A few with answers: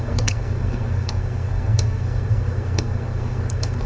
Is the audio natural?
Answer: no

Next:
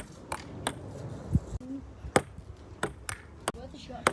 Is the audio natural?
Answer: yes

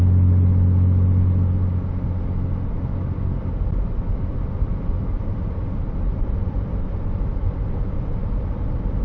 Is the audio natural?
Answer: yes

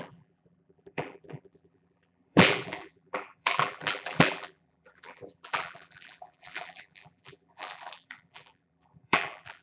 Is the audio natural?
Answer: no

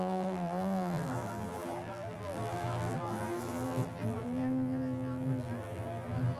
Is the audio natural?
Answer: no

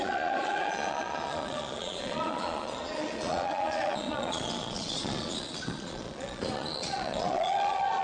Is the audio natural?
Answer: no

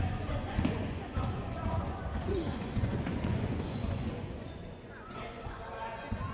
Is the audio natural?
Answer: no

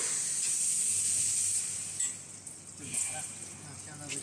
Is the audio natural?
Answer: yes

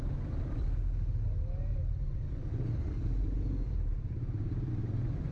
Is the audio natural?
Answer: yes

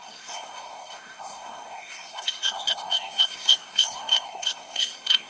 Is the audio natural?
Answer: no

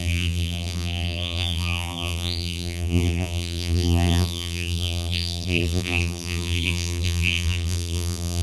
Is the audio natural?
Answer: no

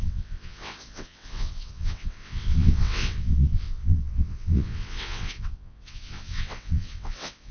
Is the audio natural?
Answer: no